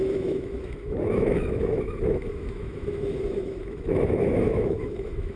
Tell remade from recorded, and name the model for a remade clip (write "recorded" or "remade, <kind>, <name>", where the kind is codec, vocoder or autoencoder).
remade, autoencoder, DAC-VAE